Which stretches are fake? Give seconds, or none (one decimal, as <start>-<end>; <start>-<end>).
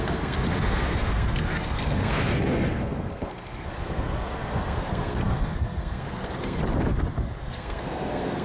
0.0-6.6; 7.4-8.4